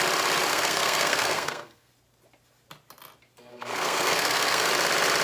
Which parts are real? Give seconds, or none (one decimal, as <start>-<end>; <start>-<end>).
0.0-0.5; 1.9-3.5; 4.7-5.2

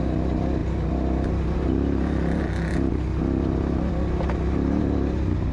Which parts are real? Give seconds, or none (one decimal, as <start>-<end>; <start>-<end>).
0.0-5.5

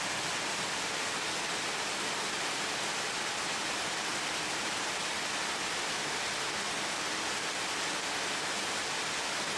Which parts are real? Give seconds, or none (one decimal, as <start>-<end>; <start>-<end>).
0.0-9.6

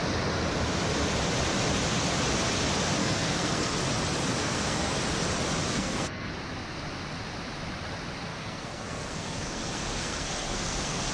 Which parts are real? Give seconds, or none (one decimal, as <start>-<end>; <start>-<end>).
0.0-3.0; 3.7-4.4; 5.0-5.6; 6.3-8.3

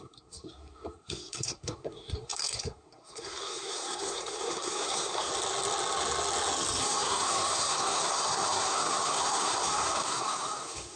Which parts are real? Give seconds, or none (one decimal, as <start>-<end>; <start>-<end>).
5.3-6.8

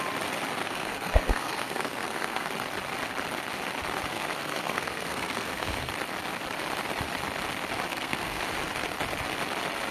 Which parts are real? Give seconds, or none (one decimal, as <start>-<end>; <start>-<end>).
0.0-0.6; 2.5-4.1; 5.9-7.9; 8.4-9.9

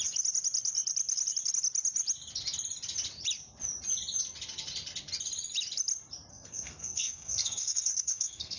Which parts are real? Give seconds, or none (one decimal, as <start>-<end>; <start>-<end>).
0.0-6.3

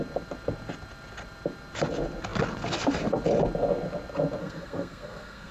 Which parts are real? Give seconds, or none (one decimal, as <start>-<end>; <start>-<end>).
0.0-4.4